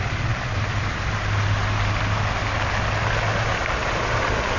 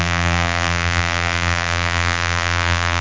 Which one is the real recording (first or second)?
first